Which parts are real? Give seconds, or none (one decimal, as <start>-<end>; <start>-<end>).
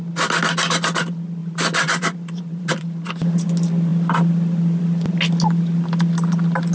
0.0-1.4; 3.1-6.7